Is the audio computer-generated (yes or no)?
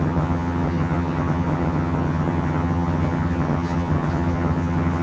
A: yes